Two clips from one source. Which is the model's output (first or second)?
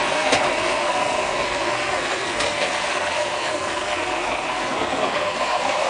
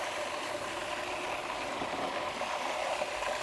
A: first